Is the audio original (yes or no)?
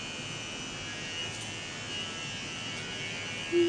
yes